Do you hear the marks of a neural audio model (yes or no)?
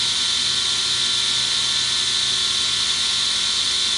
no